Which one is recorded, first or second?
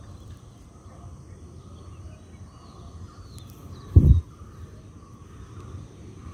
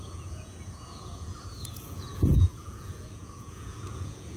first